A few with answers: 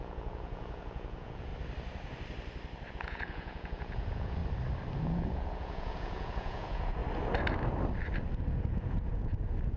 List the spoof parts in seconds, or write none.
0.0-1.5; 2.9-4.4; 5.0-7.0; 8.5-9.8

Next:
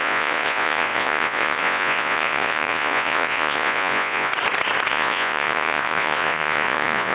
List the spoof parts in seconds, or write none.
0.0-4.3; 4.9-7.1

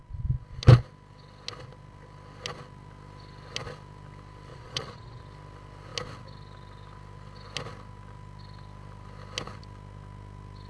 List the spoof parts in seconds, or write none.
4.5-5.2